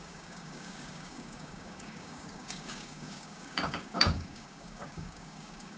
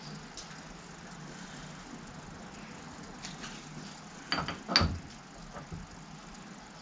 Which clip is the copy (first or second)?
first